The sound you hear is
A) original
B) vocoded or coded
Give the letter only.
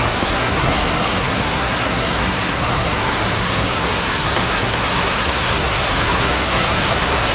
B